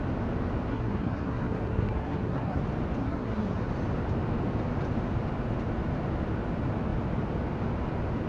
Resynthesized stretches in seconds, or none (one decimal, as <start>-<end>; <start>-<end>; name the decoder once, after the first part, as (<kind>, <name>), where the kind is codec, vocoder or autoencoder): 0.7-2.6 (codec, SNAC); 3.0-3.7